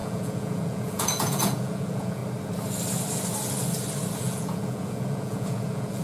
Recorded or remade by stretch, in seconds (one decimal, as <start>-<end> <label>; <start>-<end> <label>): 0.0-2.2 remade; 2.2-4.2 recorded; 4.2-6.0 remade